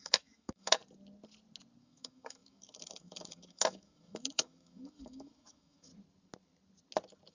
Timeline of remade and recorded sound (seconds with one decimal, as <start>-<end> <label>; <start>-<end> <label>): 0.0-0.8 remade; 0.8-1.8 recorded; 1.8-5.9 remade; 5.9-7.3 recorded